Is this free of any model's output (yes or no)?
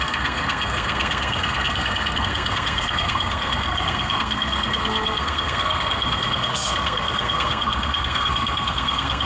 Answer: no